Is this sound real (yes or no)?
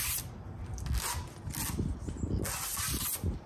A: yes